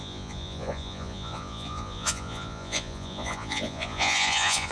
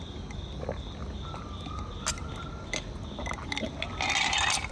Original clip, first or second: second